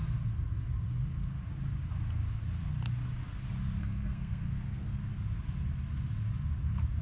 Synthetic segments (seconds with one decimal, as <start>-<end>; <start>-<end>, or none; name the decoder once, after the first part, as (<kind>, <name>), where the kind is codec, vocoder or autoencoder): 3.8-5.0 (codec, SNAC)